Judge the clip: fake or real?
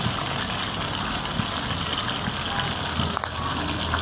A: real